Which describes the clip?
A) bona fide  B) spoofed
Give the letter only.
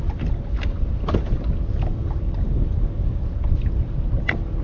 A